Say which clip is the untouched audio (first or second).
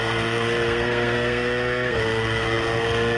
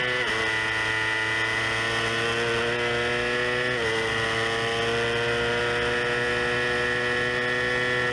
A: second